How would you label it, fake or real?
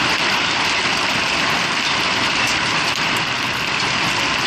fake